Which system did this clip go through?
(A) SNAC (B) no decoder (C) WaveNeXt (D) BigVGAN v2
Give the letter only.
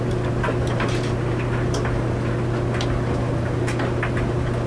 B